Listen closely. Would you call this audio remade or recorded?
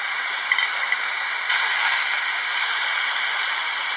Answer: recorded